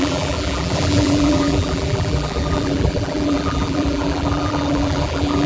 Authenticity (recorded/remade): remade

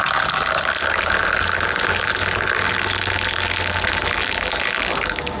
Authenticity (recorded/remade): recorded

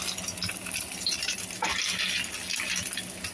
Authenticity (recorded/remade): recorded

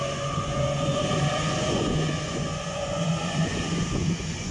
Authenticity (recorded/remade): remade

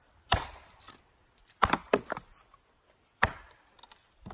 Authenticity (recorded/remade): recorded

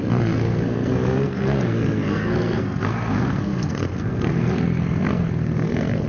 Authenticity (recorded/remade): remade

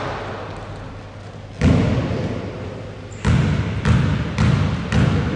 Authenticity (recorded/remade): recorded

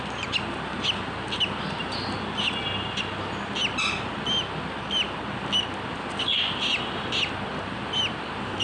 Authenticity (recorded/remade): recorded